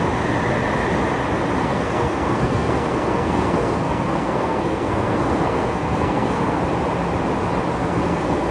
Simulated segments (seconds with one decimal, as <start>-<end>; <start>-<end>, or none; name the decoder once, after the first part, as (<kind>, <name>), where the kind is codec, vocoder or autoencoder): 1.6-6.6 (codec, SNAC); 7.8-8.5